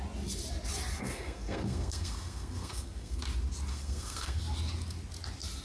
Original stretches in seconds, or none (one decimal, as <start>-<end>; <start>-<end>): 0.0-1.0; 3.2-3.7; 4.4-5.6